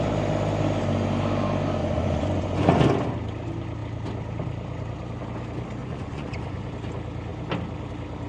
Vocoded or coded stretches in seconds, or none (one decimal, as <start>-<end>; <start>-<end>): 1.8-2.8; 5.8-6.7